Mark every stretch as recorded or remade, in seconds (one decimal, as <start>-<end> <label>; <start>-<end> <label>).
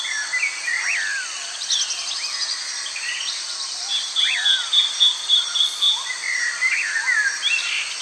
0.0-2.6 recorded; 2.6-6.5 remade; 6.5-8.0 recorded